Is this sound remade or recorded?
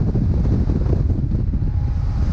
recorded